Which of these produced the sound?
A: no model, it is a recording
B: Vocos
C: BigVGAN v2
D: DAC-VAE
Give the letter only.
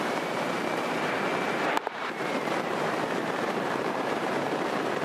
C